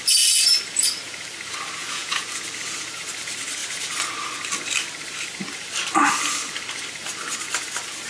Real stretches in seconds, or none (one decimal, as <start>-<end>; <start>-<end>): 0.0-1.8; 2.4-8.1